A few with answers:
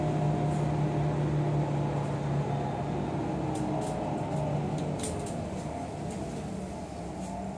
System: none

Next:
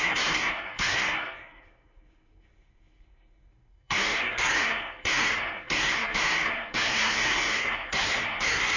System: codec, SNAC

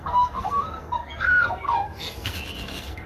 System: codec, SNAC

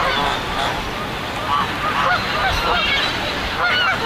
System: none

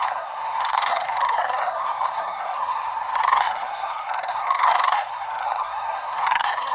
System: codec, SNAC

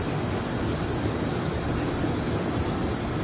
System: none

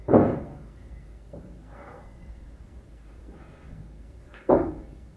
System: codec, SNAC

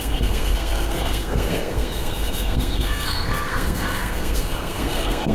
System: codec, SNAC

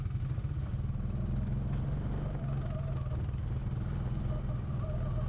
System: none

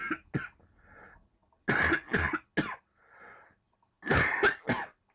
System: none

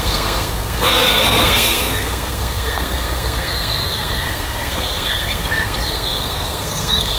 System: codec, SNAC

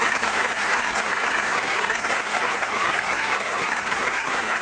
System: codec, SNAC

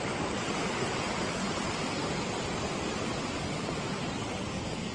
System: none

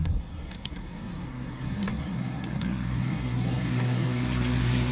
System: codec, SNAC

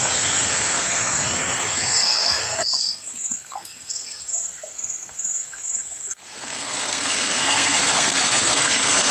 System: codec, SNAC